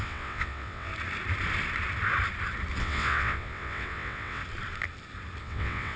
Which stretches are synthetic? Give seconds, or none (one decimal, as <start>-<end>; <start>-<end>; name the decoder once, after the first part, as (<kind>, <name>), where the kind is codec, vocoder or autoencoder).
0.0-0.9 (vocoder, WaveNeXt); 2.8-4.4; 5.4-6.0